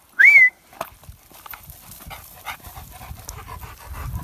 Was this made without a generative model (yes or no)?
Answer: yes